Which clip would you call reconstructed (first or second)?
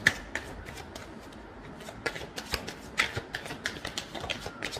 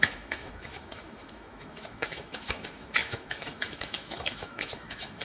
second